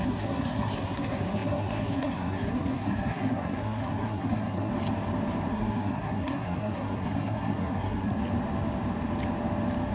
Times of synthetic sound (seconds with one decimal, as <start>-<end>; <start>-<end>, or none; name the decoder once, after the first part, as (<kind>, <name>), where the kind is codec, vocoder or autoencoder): 0.0-4.7 (codec, SNAC); 5.5-8.2